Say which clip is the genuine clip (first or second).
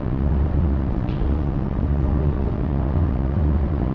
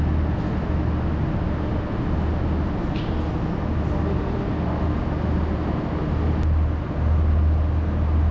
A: second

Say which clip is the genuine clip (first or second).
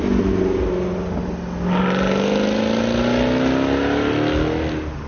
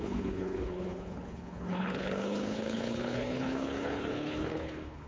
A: first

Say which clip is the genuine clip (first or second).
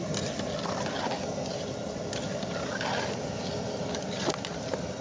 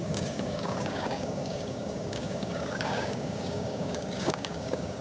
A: first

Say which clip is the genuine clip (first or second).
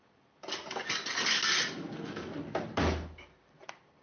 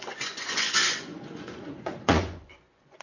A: first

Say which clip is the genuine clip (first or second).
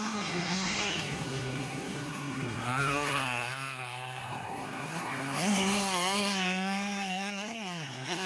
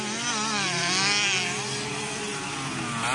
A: second